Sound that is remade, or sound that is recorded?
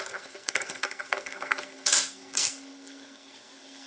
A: remade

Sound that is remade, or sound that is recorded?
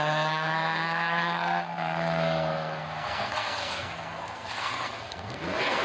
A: remade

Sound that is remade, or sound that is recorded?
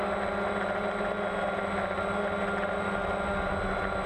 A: recorded